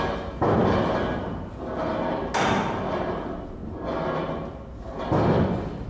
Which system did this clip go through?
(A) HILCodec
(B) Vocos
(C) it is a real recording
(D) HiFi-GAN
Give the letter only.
C